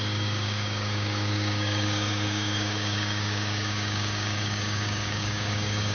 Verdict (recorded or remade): remade